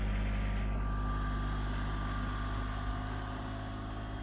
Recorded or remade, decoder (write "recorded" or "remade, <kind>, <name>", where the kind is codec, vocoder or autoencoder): recorded